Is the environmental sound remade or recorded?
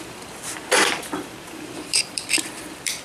remade